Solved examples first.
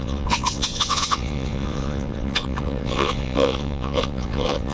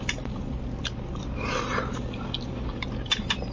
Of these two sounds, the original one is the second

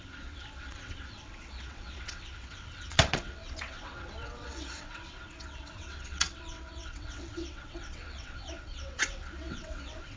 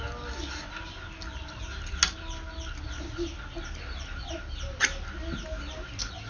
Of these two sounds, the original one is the second